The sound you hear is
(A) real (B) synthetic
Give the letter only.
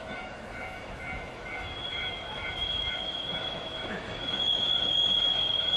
B